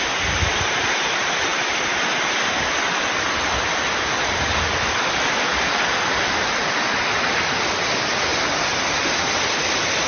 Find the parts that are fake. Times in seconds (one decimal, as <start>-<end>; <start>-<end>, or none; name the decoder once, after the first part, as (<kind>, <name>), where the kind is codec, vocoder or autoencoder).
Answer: none